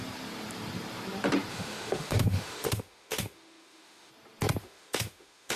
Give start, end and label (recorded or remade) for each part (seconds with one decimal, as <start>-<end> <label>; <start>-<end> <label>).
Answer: 0.0-1.5 recorded; 1.5-4.1 remade; 4.1-4.6 recorded; 4.6-5.6 remade